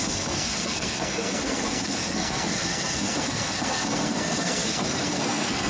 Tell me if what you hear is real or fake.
fake